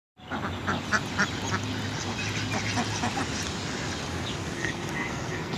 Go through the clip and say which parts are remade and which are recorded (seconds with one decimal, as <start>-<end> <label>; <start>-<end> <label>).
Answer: 0.0-4.4 recorded; 4.4-5.6 remade